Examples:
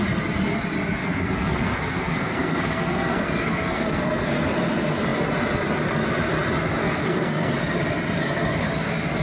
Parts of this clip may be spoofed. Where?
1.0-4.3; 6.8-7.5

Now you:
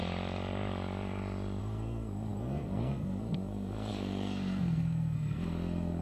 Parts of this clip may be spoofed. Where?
1.6-6.0

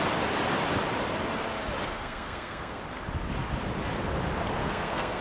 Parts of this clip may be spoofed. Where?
1.8-2.8; 4.6-5.2

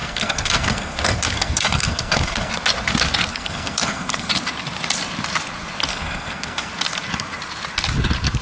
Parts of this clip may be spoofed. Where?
0.0-2.5; 3.3-4.3; 5.9-6.7

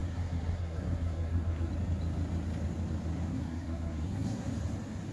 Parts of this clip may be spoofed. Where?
0.0-1.7; 3.3-4.5

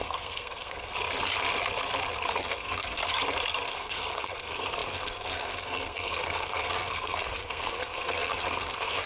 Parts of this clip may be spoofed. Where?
0.0-0.9; 2.3-3.0; 3.7-9.1

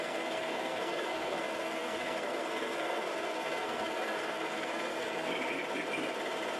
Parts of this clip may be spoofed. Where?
0.0-5.3